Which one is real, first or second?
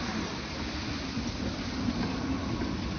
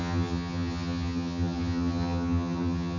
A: first